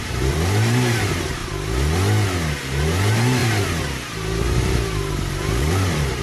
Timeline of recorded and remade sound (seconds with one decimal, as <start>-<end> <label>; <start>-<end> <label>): 0.0-1.4 remade; 1.4-2.6 recorded; 2.6-3.4 remade; 3.4-5.1 recorded; 5.1-6.2 remade